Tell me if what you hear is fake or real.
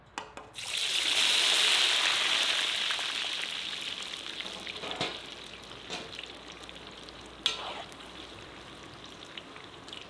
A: real